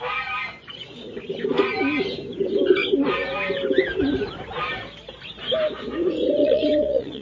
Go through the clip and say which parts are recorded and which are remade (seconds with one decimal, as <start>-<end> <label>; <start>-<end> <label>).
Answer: 0.0-6.4 recorded; 6.4-7.2 remade